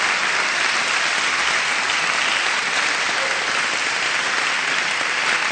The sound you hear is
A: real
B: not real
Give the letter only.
A